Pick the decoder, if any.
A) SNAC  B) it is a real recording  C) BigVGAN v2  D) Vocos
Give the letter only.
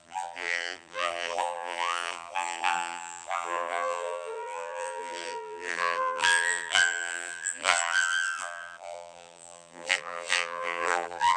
C